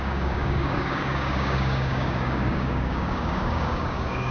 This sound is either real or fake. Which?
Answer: fake